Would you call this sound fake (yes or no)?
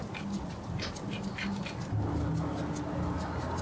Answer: no